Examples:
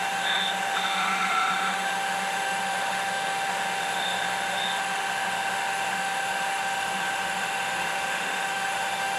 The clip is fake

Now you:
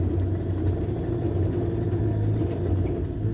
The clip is real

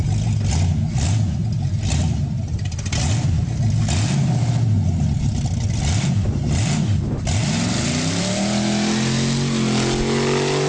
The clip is real